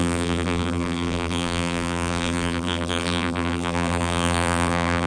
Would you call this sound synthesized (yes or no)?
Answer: yes